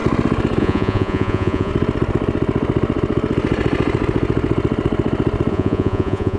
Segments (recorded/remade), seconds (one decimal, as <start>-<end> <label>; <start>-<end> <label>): 0.0-0.6 recorded; 0.6-1.7 remade; 1.7-5.5 recorded; 5.5-6.4 remade